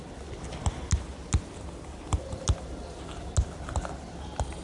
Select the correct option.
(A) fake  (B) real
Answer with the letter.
B